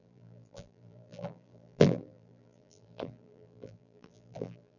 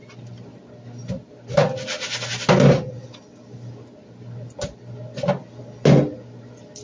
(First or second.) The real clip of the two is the second